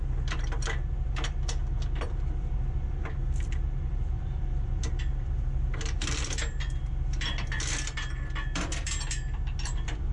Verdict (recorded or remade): remade